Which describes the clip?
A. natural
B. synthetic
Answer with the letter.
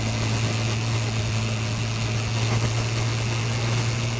A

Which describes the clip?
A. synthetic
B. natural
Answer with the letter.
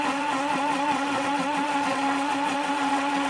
A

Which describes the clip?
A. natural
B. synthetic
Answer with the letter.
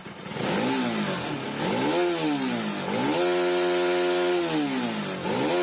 A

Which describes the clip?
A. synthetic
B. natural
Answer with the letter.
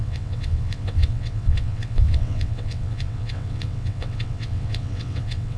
A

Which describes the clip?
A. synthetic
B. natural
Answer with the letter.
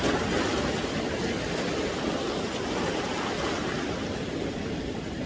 B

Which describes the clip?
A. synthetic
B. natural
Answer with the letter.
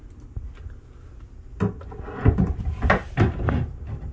B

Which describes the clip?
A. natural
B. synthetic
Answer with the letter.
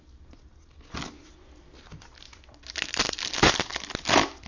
A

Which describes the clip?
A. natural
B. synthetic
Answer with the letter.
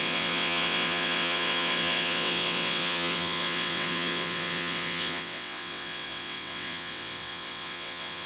B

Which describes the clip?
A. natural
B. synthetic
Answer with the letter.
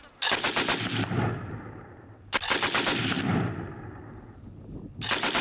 A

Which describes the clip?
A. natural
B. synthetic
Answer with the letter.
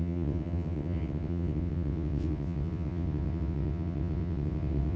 B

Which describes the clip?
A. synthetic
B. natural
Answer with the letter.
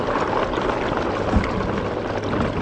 B